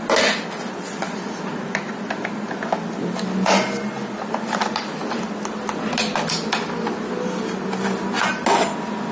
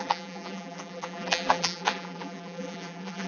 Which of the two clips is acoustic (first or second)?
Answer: first